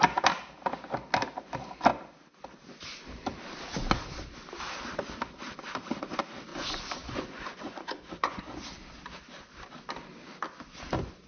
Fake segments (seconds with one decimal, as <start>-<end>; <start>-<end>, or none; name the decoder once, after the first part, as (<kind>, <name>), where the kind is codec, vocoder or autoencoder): 6.5-8.4 (vocoder, Vocos)

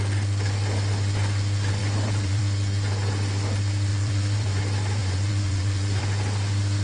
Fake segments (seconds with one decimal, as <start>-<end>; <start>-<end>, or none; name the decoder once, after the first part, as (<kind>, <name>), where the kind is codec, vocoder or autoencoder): 1.8-2.4 (vocoder, Vocos); 3.9-4.6; 5.0-6.0

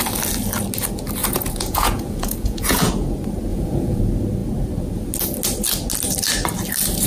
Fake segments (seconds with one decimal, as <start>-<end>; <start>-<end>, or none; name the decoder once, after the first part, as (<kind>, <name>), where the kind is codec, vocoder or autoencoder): 1.2-2.9 (vocoder, Vocos); 3.5-4.0

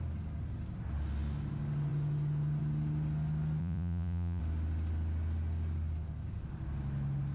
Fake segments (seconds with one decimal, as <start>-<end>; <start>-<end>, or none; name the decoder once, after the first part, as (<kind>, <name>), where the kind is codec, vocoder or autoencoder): 3.6-4.4 (vocoder, Vocos)

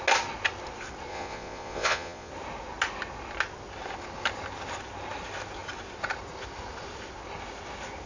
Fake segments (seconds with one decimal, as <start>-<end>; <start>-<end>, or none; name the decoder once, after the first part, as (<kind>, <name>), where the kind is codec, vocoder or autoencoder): 1.1-2.3 (vocoder, Vocos)

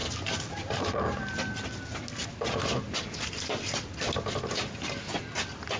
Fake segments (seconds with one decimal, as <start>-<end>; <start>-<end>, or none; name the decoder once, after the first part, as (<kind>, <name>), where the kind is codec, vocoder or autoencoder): none